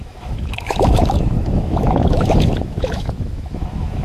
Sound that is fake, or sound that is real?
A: fake